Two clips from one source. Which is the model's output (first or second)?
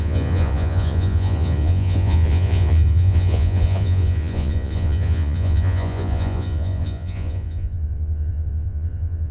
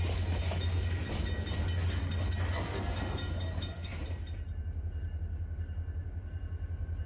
first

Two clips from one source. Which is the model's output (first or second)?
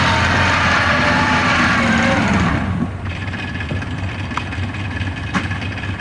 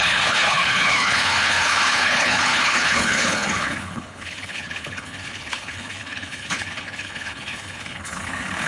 second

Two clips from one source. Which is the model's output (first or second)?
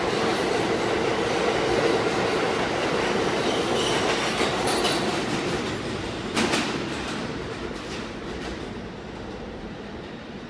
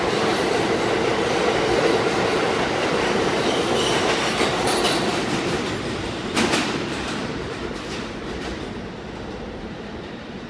second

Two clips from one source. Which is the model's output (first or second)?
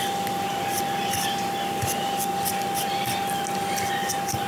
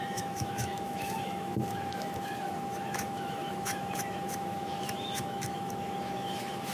second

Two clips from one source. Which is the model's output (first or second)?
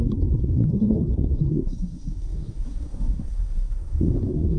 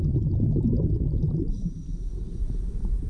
first